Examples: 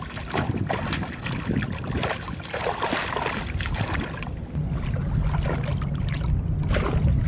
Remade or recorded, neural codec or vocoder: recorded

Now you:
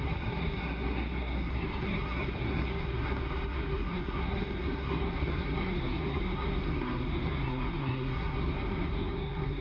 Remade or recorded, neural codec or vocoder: remade, codec, SNAC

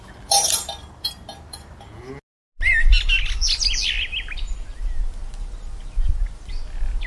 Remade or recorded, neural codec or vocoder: recorded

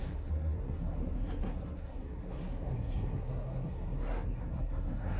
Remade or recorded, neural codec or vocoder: remade, codec, SNAC